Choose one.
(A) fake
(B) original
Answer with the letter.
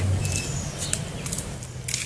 B